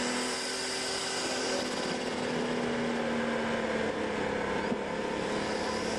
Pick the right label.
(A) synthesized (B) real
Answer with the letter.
B